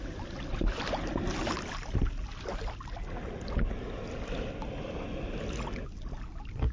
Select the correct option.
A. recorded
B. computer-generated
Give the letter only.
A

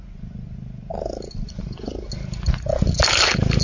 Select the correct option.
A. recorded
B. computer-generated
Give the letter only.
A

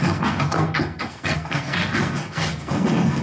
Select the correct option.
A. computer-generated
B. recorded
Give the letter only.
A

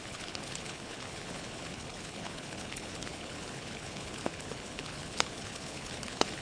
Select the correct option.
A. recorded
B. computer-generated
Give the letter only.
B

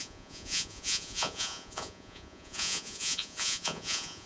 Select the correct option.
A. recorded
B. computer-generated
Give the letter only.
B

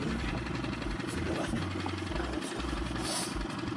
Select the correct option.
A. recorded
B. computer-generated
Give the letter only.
A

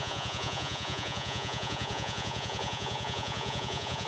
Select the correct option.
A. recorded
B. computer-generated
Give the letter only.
B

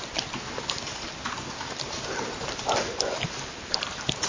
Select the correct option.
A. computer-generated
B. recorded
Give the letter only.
A